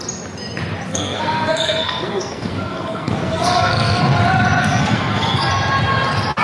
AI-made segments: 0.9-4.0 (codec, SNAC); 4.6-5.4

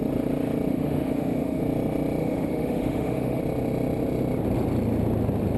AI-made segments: 0.7-1.6 (autoencoder, DAC-VAE); 2.2-3.4

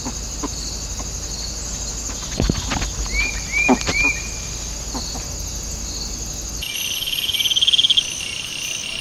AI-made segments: none

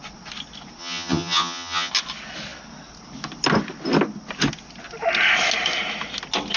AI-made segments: 0.8-1.9 (vocoder, HiFi-GAN)